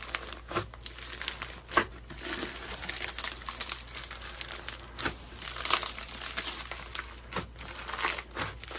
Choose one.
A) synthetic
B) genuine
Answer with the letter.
B